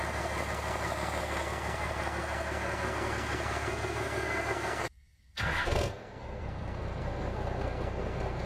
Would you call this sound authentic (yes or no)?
no